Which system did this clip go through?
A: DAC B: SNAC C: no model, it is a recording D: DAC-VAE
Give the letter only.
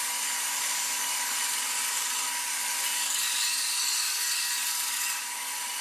A